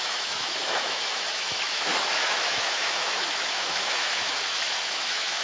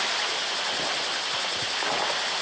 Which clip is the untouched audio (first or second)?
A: second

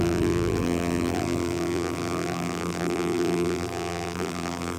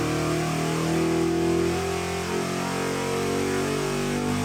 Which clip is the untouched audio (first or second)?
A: second